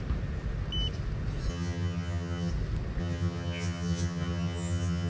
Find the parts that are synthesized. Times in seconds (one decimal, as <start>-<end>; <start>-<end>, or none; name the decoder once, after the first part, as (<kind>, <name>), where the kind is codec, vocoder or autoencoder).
1.5-2.5 (vocoder, HiFi-GAN); 3.0-5.1